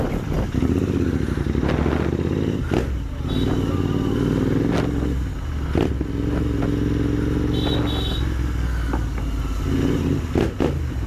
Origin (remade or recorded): recorded